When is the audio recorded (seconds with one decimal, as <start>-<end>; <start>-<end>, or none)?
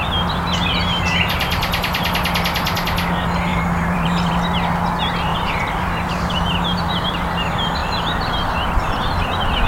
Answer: 0.0-3.5; 4.3-5.3; 7.1-7.8; 8.3-9.7